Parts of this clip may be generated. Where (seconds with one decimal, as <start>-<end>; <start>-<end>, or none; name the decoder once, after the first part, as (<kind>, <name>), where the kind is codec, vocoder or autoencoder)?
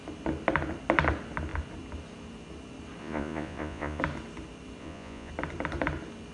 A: 3.0-4.0 (vocoder, Vocos); 4.8-5.3